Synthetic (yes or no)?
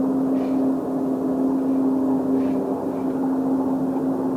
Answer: no